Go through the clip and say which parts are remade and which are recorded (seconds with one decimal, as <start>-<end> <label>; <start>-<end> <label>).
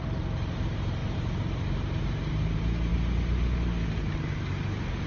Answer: 0.0-2.9 remade; 2.9-4.0 recorded; 4.0-5.1 remade